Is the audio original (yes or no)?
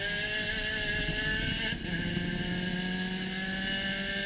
yes